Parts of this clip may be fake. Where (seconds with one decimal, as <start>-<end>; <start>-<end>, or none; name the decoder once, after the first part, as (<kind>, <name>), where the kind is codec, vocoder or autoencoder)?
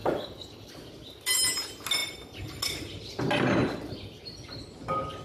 0.0-0.7 (codec, DAC)